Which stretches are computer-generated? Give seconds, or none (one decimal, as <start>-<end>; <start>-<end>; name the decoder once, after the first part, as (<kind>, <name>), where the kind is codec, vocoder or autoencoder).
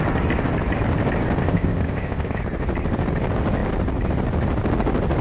1.4-2.4 (codec, ZipCodec)